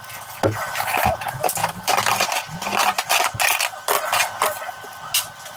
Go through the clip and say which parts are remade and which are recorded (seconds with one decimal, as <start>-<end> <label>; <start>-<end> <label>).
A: 0.0-5.6 recorded